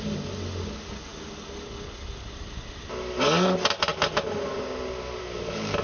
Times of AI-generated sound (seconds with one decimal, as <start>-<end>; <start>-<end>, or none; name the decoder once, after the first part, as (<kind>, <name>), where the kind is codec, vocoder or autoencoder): none